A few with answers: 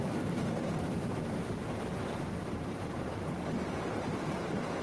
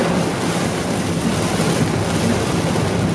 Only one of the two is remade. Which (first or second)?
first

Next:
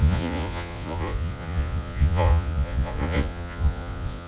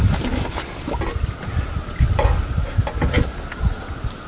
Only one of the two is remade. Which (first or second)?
first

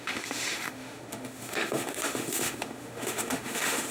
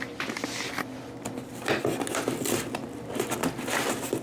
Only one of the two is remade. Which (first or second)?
first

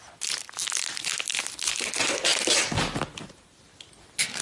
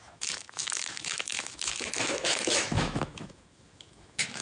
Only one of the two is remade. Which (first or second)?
second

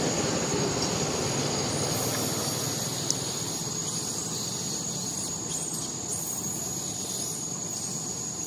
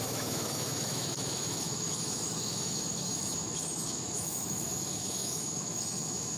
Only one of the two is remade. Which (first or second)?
second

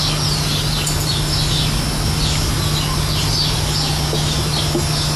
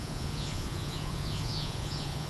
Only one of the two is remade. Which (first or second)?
second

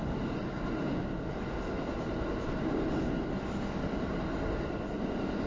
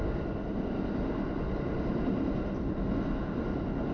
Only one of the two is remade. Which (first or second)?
first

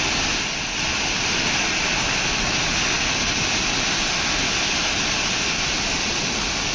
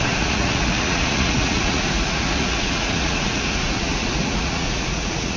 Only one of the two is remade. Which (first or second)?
second